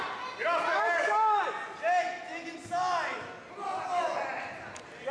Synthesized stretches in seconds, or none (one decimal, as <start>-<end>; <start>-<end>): 0.7-1.4